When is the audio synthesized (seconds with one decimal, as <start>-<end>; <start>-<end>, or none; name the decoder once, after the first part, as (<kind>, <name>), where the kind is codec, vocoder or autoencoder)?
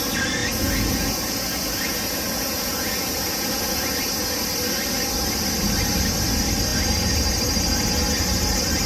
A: 0.4-4.4 (vocoder, Vocos)